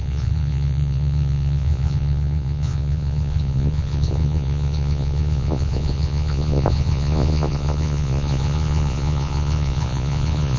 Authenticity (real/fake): fake